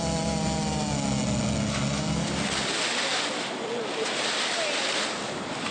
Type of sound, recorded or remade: recorded